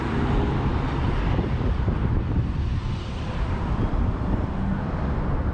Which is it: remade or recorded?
remade